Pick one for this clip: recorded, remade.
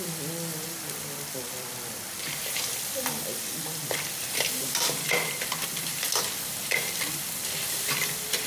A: remade